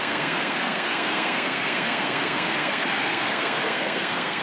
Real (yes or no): no